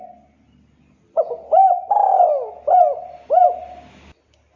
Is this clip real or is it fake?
real